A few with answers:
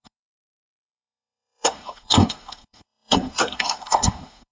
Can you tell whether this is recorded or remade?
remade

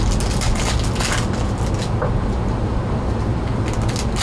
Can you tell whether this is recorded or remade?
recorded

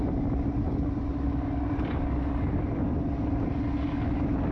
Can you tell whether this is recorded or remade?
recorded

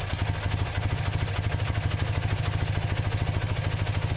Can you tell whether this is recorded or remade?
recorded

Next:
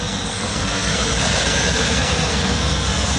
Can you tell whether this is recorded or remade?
remade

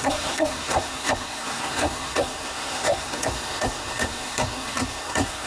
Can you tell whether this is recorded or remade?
remade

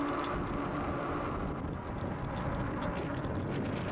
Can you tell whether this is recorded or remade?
recorded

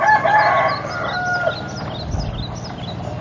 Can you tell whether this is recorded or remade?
recorded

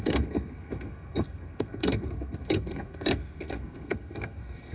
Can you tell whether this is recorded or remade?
remade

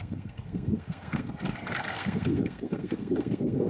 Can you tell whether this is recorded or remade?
remade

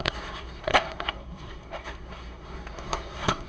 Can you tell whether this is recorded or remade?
remade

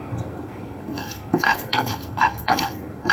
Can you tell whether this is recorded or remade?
remade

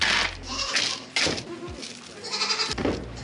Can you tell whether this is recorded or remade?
recorded